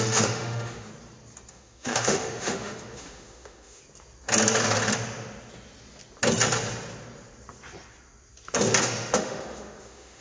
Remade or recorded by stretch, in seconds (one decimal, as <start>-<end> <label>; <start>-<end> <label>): 0.0-0.9 remade; 0.9-1.5 recorded; 1.5-3.8 remade; 3.8-8.8 recorded; 8.8-10.2 remade